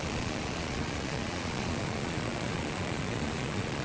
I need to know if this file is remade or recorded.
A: remade